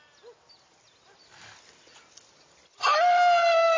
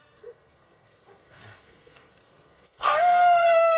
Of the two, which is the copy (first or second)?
second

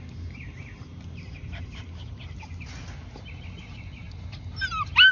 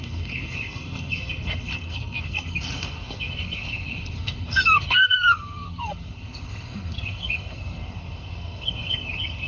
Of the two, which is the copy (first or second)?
second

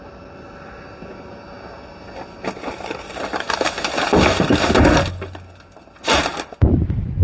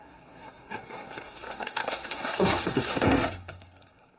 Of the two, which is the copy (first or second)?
second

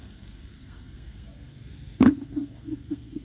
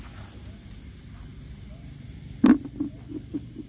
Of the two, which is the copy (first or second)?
first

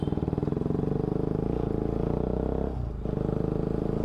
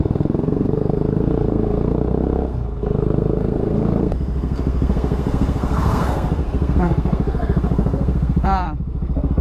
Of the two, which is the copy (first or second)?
second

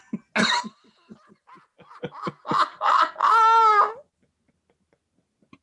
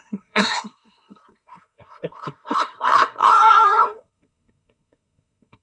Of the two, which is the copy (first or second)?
second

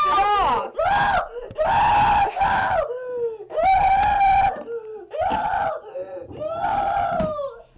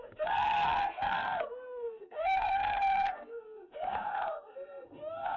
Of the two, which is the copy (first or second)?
second